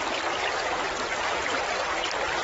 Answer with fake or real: real